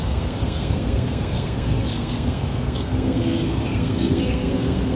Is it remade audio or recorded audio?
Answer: remade